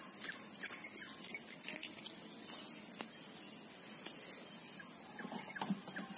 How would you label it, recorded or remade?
recorded